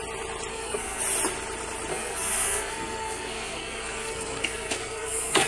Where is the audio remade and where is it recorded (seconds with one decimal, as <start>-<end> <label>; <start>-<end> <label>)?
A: 0.0-0.5 recorded; 0.5-1.0 remade; 1.0-1.9 recorded; 1.9-5.5 remade